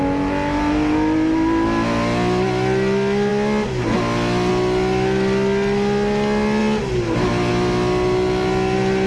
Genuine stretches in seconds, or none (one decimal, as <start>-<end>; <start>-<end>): 0.0-9.1